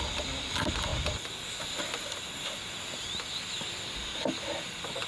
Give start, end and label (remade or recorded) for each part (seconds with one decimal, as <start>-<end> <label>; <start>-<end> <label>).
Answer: 0.0-5.1 recorded